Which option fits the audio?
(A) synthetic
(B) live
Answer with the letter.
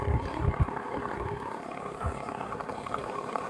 A